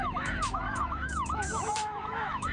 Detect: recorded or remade remade